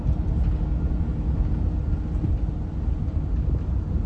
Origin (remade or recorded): recorded